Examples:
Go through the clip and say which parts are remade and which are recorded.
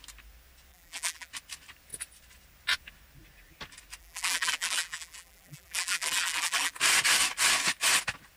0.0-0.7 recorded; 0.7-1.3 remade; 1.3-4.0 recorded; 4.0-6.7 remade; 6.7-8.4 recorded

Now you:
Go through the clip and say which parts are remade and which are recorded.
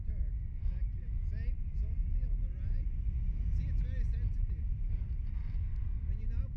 0.0-6.6 recorded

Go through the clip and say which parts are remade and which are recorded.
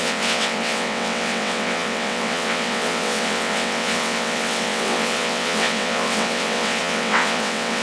0.0-7.8 remade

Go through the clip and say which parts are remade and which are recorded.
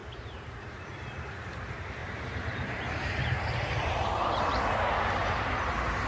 0.0-0.6 remade; 0.6-2.0 recorded; 2.0-4.7 remade; 4.7-5.2 recorded; 5.2-6.1 remade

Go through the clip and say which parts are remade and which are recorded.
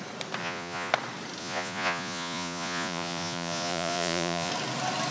0.0-0.4 recorded; 0.4-0.9 remade; 0.9-1.4 recorded; 1.4-4.5 remade; 4.5-5.1 recorded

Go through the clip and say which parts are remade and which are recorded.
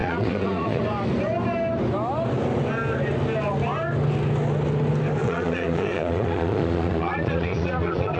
0.0-0.8 remade; 0.8-5.2 recorded; 5.2-8.2 remade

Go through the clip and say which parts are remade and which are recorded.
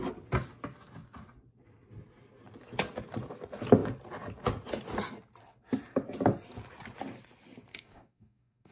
0.0-7.7 recorded; 7.7-8.7 remade